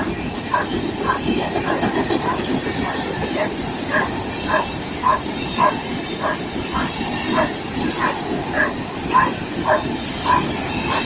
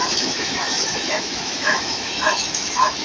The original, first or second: first